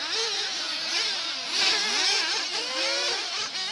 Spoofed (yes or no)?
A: no